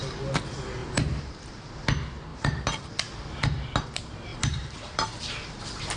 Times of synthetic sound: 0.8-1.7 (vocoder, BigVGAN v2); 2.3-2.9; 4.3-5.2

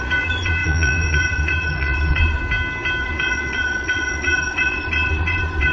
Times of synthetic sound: 0.0-2.4 (vocoder, Vocos); 3.0-5.7

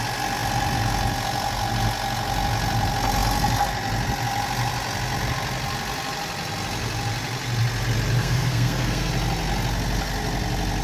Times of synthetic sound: 8.2-9.1 (codec, SNAC)

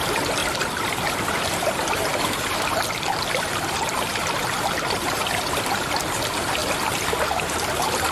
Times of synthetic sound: 0.0-0.4 (vocoder, BigVGAN v2); 1.1-8.1